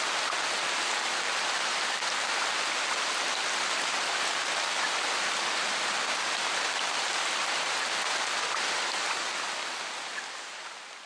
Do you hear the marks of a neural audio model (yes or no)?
no